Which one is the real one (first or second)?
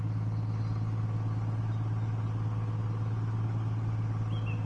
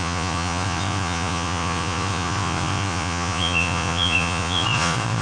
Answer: first